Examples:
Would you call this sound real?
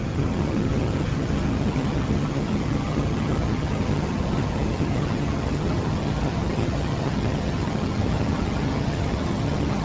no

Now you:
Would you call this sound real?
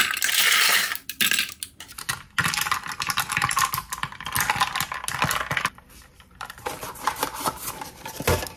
yes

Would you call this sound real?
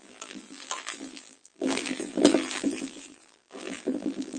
no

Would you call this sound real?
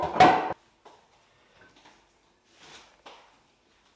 yes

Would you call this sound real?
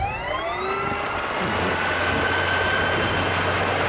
yes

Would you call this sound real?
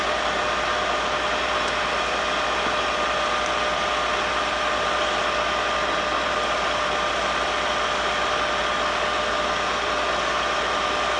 yes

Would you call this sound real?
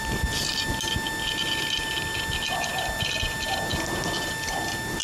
yes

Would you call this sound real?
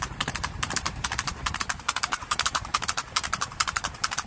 no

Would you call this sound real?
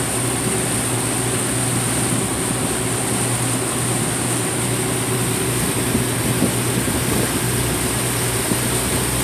yes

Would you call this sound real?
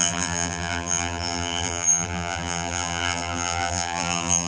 no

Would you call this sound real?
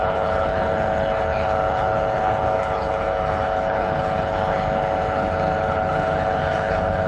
no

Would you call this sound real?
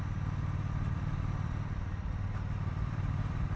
no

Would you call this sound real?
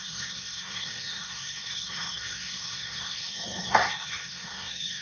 no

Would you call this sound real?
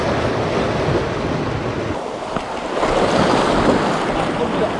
yes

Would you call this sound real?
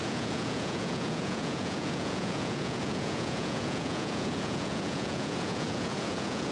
no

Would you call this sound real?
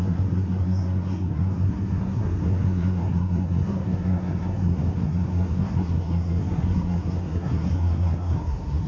no